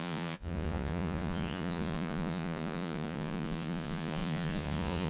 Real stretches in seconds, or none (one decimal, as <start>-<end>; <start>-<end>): none